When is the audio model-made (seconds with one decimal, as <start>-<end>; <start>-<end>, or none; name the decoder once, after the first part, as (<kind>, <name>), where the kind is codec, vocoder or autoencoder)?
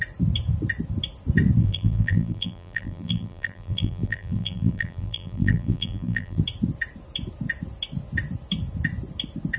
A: 1.6-6.4 (vocoder, BigVGAN v2)